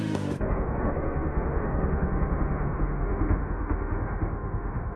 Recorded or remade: remade